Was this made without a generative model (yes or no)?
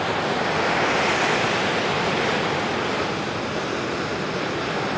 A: yes